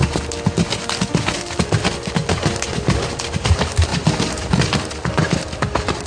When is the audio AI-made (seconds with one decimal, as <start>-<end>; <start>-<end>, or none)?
3.9-4.6